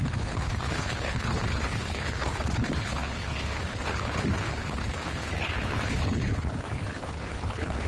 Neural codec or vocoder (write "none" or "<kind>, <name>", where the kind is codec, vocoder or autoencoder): codec, HILCodec